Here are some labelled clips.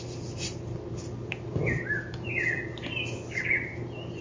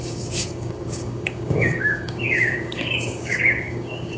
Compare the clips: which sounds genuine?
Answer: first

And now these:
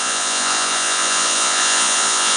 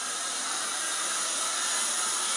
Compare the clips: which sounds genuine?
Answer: second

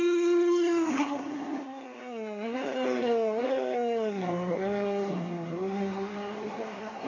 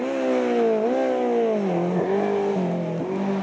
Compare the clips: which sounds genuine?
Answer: second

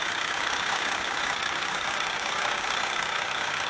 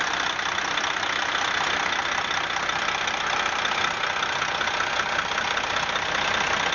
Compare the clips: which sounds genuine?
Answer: second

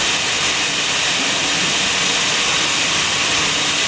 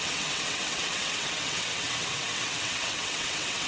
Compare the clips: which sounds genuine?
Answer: first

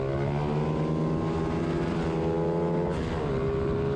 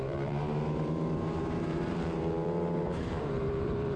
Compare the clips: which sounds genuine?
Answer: first